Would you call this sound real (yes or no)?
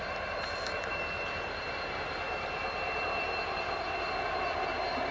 yes